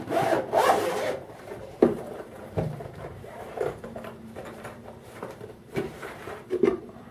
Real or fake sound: fake